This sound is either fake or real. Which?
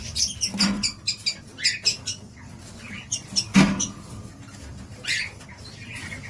real